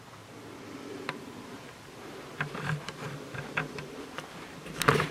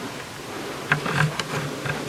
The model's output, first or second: first